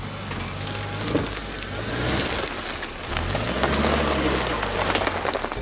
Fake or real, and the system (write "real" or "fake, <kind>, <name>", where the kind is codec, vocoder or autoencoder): real